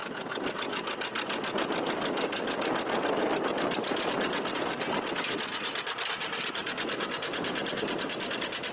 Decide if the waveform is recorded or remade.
recorded